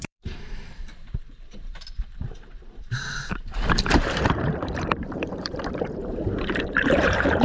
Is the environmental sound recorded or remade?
remade